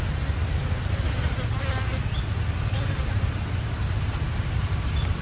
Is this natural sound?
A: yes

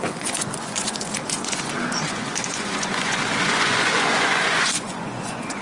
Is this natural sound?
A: no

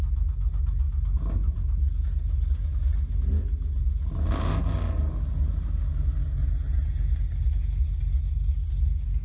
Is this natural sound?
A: yes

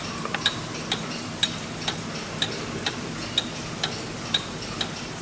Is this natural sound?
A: no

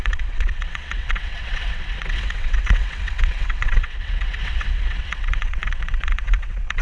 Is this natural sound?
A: no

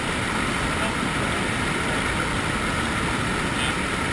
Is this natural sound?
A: yes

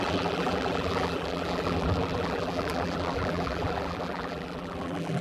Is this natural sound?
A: no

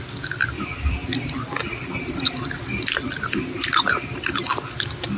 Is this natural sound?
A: yes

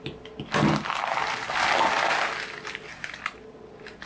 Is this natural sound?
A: yes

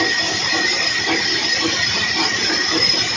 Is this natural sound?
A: yes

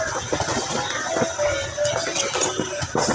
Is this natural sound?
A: yes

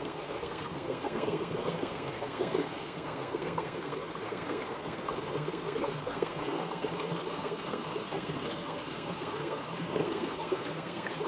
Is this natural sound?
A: no